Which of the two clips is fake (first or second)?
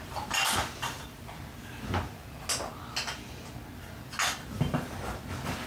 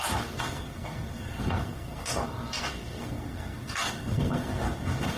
second